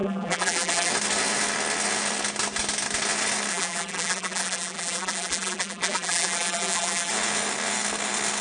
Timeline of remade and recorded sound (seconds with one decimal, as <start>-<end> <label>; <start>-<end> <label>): 0.0-0.9 remade; 0.9-3.5 recorded; 3.5-7.1 remade; 7.1-8.4 recorded